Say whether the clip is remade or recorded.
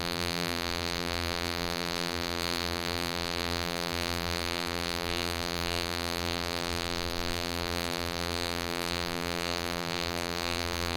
remade